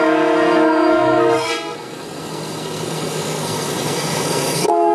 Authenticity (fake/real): fake